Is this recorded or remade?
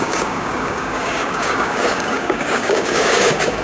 remade